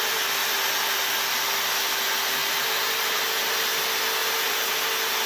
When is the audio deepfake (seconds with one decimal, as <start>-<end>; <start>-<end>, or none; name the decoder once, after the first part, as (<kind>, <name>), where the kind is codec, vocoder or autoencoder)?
2.4-3.3 (vocoder, BigVGAN v2); 4.2-4.8